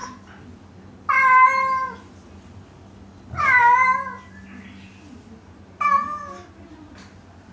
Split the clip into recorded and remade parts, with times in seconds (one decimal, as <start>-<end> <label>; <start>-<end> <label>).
0.0-7.5 recorded